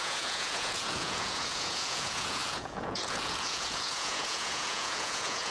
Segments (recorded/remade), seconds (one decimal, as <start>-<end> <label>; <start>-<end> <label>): 0.0-5.5 remade